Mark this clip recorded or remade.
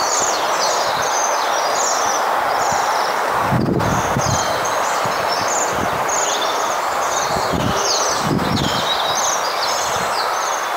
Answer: recorded